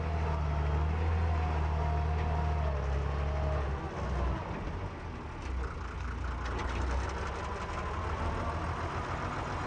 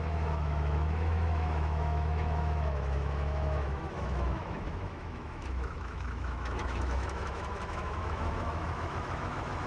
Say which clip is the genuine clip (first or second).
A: first